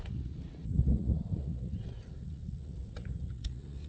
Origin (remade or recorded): remade